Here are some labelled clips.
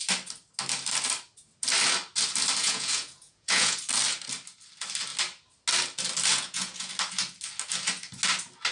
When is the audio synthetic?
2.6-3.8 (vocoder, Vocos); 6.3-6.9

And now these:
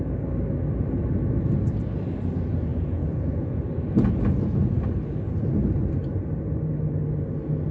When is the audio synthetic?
2.7-3.6 (vocoder, Vocos)

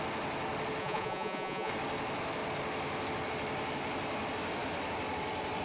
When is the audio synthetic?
0.8-1.7 (vocoder, Vocos)

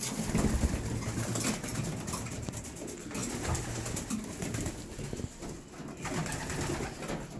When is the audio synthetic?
none

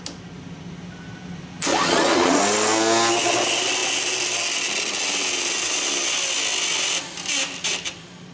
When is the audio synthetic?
1.7-2.4 (vocoder, Vocos)

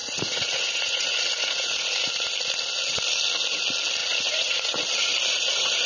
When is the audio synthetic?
0.0-2.1 (vocoder, Vocos); 4.0-4.8

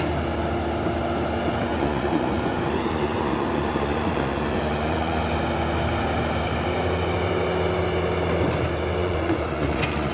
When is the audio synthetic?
1.7-5.2 (vocoder, Vocos); 9.0-10.1